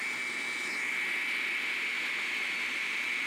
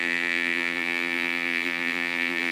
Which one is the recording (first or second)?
first